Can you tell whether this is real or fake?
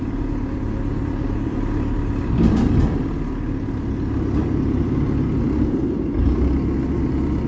fake